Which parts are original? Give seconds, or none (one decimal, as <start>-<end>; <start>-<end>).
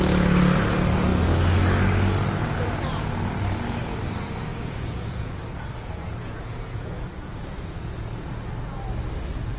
0.0-4.5; 8.3-9.6